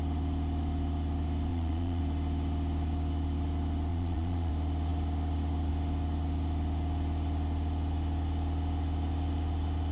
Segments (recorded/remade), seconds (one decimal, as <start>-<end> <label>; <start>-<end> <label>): 0.0-1.5 recorded; 1.5-2.0 remade; 2.0-3.9 recorded; 3.9-4.5 remade; 4.5-9.9 recorded